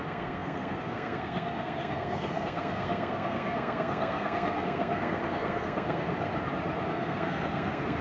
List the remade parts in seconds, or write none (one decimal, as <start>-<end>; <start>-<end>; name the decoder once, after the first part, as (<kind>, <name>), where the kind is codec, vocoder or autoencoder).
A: 0.0-6.3 (codec, SNAC); 6.9-8.0